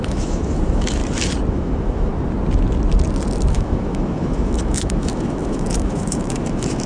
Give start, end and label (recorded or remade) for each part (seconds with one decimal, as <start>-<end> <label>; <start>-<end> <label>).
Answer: 0.0-1.0 remade; 1.0-1.5 recorded; 1.5-2.1 remade; 2.1-3.5 recorded; 3.5-6.9 remade